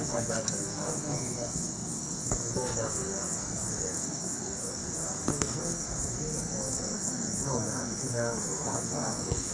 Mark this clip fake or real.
fake